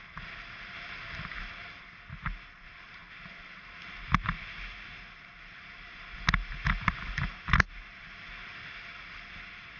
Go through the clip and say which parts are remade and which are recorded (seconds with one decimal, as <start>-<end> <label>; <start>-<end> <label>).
0.0-9.8 recorded